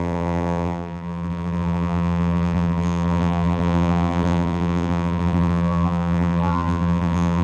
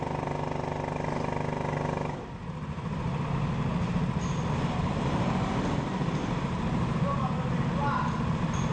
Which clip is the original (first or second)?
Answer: second